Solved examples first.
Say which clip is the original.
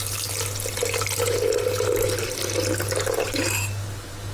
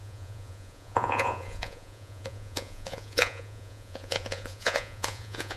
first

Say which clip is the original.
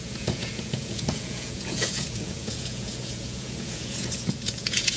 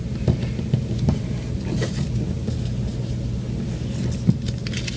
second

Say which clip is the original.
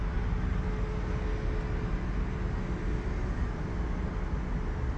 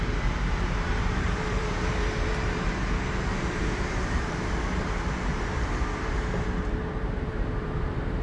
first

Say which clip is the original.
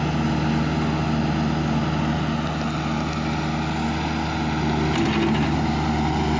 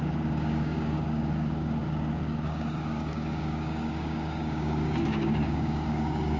first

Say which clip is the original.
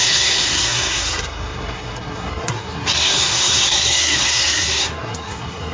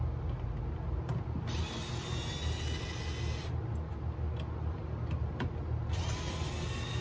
second